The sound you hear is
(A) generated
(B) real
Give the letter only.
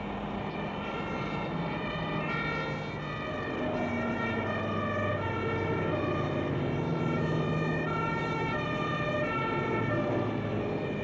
B